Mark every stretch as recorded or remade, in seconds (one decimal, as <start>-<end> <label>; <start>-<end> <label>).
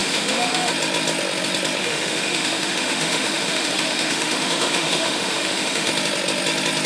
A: 0.0-0.7 remade; 0.7-1.8 recorded; 1.8-5.9 remade; 5.9-6.9 recorded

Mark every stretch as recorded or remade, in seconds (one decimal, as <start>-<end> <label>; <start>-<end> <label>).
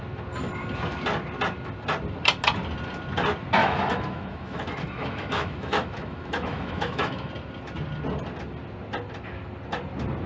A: 0.0-3.6 recorded; 3.6-7.3 remade; 7.3-10.3 recorded